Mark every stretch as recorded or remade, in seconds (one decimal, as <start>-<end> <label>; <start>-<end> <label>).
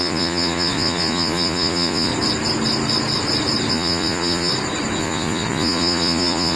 0.0-2.1 remade; 2.1-3.7 recorded; 3.7-4.5 remade; 4.5-5.0 recorded; 5.0-6.6 remade